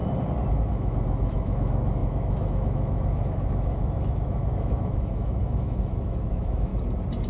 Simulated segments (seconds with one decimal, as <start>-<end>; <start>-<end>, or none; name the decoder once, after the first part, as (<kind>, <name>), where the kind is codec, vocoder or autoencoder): 0.5-6.7 (autoencoder, DAC-VAE)